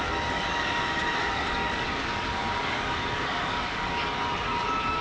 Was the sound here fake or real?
fake